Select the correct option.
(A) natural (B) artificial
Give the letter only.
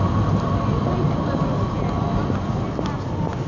A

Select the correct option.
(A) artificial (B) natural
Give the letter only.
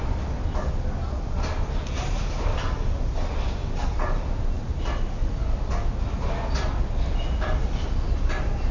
B